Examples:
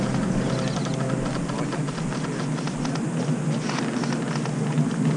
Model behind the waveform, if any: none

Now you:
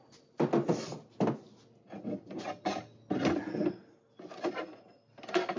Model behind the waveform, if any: none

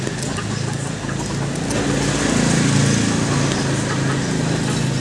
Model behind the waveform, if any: none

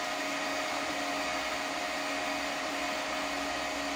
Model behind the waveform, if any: none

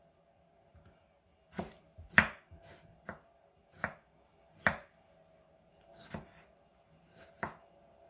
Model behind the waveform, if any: none